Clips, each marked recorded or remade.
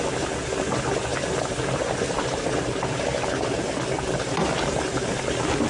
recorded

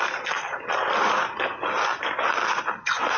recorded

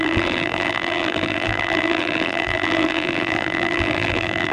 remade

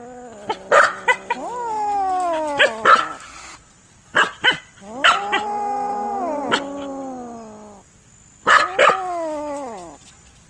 recorded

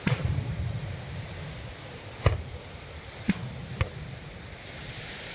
remade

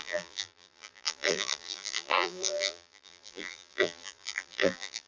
remade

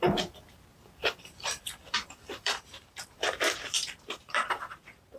remade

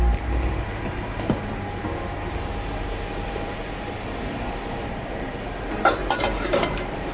remade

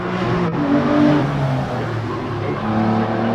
recorded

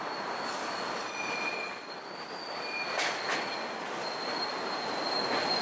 recorded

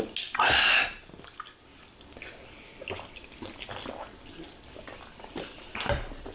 recorded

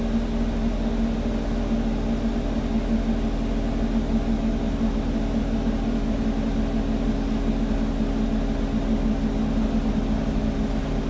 recorded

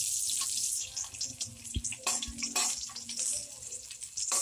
recorded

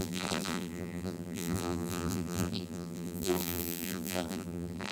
remade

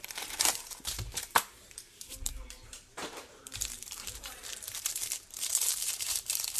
remade